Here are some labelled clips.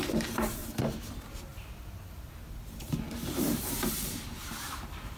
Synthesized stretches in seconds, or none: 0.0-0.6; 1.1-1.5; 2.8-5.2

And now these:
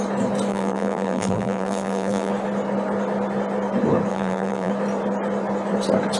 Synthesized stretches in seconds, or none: 0.5-2.3; 4.1-4.7